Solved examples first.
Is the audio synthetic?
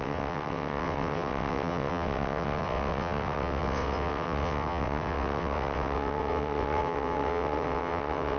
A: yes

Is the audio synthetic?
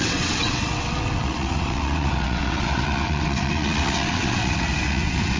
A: yes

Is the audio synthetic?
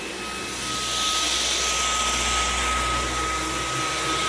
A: no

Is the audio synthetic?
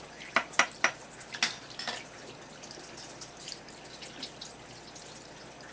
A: no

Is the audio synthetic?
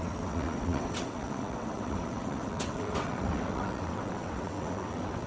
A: yes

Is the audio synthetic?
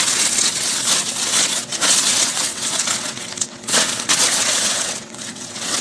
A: yes